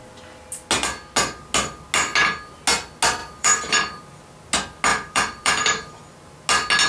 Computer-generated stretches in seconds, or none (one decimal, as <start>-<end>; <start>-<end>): 3.2-4.0; 4.9-5.9